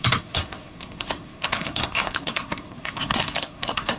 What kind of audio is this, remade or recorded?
remade